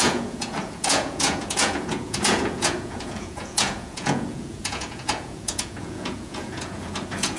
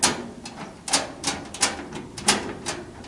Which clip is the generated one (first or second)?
first